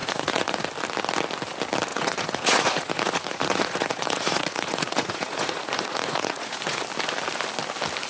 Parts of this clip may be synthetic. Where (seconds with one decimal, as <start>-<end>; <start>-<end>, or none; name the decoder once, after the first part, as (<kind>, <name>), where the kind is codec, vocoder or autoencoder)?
0.0-0.6 (vocoder, Vocos); 1.9-6.8